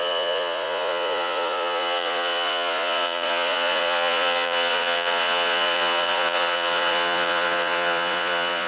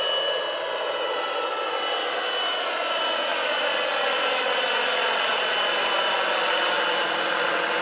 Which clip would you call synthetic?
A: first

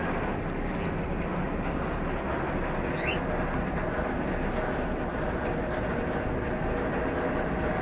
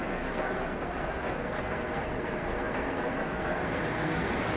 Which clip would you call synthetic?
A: second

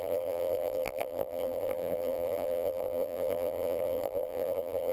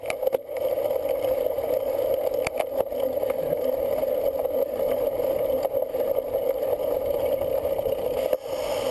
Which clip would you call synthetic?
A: first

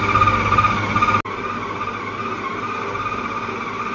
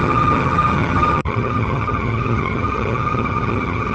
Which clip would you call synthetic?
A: second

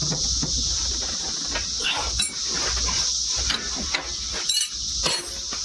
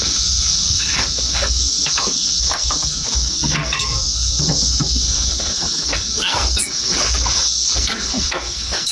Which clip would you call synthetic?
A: second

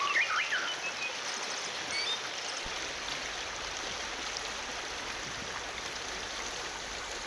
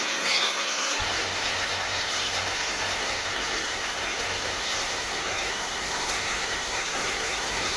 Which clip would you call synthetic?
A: second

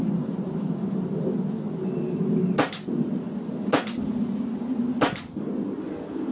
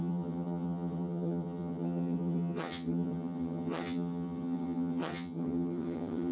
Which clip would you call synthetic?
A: second